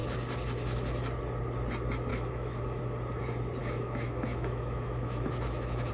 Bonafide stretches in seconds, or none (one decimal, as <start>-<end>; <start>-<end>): 0.0-2.1; 2.8-3.6